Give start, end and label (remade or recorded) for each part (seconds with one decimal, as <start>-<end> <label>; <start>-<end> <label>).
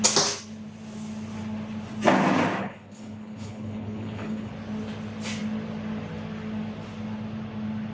0.0-2.6 recorded; 2.6-4.5 remade; 4.5-7.9 recorded